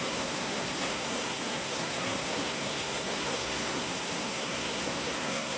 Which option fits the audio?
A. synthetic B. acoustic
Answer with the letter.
A